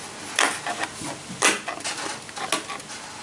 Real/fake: real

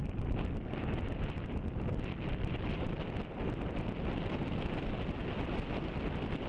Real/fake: real